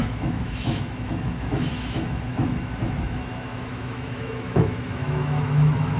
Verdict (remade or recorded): remade